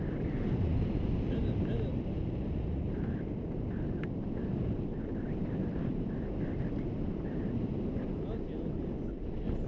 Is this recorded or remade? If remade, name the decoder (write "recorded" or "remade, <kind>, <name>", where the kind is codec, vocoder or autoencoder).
recorded